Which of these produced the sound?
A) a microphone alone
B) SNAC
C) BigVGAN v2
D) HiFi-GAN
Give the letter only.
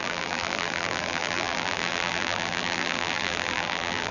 C